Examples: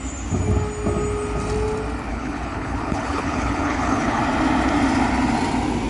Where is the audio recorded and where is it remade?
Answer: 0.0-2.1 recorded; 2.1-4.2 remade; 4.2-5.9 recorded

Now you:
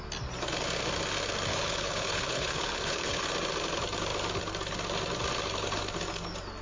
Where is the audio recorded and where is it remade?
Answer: 0.0-1.5 recorded; 1.5-3.2 remade; 3.2-6.6 recorded

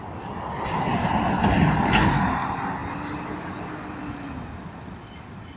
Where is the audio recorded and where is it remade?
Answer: 0.0-5.6 recorded

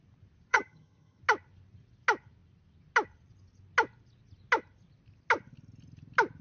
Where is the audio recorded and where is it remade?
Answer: 0.0-0.5 recorded; 0.5-1.2 remade; 1.2-6.4 recorded

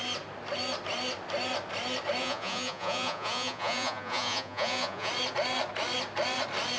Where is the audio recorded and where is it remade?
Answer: 0.0-2.2 recorded; 2.2-5.1 remade; 5.1-6.8 recorded

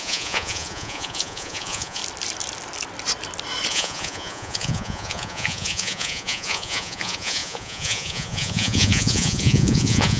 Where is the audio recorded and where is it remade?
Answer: 0.0-2.0 remade; 2.0-3.7 recorded; 3.7-10.2 remade

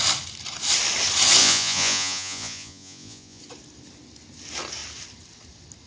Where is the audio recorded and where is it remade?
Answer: 0.0-1.4 recorded; 1.4-3.4 remade; 3.4-5.9 recorded

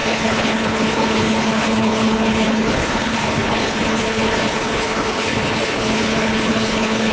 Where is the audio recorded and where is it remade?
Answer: 0.0-7.1 remade